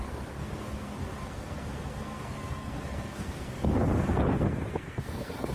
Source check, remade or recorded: remade